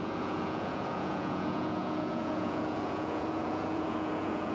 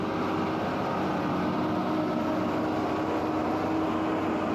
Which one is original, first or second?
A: second